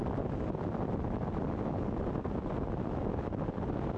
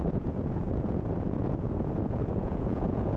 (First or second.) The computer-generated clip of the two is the second